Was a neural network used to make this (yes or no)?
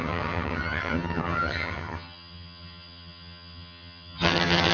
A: yes